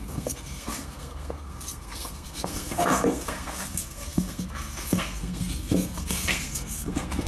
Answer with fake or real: fake